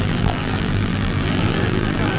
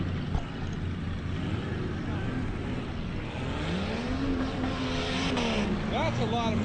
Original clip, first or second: second